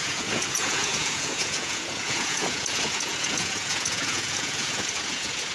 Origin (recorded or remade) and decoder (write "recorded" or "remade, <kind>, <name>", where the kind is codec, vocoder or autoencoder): remade, vocoder, Vocos